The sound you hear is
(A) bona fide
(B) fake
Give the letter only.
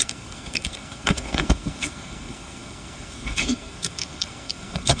B